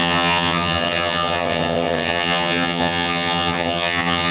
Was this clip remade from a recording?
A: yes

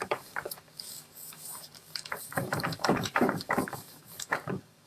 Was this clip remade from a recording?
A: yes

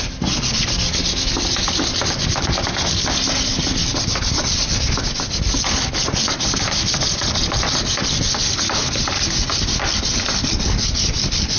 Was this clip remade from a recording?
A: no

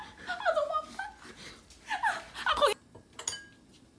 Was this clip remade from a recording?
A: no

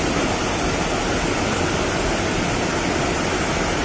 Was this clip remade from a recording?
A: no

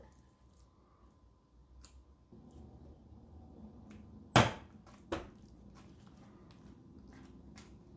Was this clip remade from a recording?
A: no